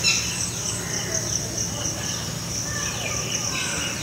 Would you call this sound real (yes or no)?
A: yes